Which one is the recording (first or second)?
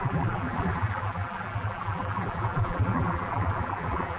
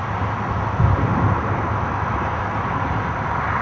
second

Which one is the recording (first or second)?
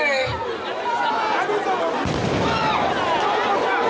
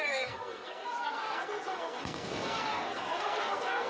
first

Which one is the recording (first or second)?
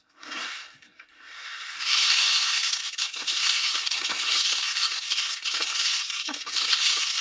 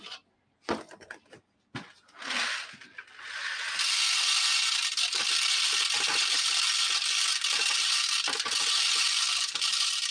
second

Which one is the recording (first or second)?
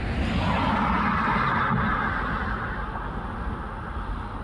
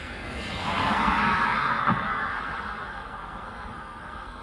first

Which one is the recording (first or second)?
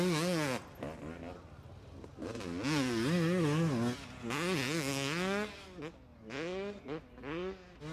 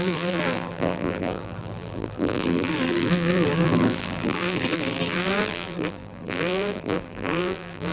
first